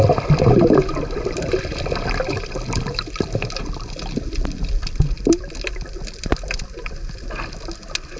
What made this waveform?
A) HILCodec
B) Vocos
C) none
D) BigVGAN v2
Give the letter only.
C